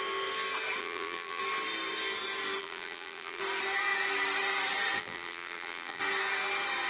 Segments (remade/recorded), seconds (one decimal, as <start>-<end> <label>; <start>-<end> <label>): 0.0-0.8 recorded; 0.8-1.4 remade; 1.4-2.6 recorded; 2.6-3.4 remade; 3.4-5.0 recorded; 5.0-6.0 remade; 6.0-6.9 recorded